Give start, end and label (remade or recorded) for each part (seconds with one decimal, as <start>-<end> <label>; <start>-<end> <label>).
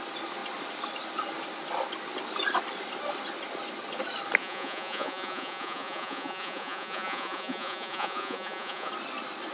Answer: 0.0-4.4 recorded; 4.4-8.9 remade; 8.9-9.5 recorded